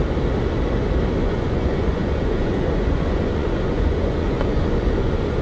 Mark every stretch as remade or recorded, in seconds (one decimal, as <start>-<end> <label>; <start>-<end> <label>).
0.0-1.2 recorded; 1.2-5.4 remade